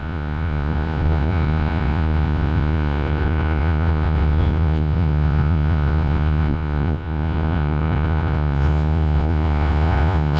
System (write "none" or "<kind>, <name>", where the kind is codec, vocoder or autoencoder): vocoder, Vocos